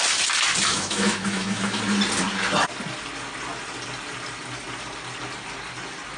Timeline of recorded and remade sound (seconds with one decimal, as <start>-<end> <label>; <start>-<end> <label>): 0.0-0.7 recorded; 0.7-1.8 remade; 1.8-6.2 recorded